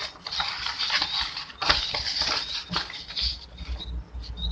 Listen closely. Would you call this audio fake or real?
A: real